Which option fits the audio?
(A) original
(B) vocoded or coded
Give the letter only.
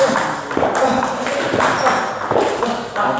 A